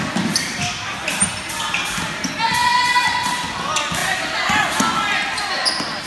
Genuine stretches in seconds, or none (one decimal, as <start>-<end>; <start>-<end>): 0.0-6.1